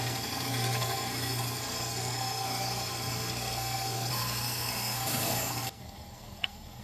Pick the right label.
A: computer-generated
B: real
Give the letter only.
A